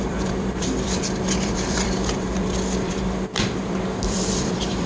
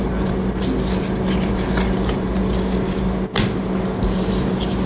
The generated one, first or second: first